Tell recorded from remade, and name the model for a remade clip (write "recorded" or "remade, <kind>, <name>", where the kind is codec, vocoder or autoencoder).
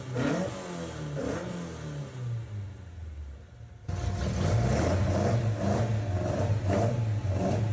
recorded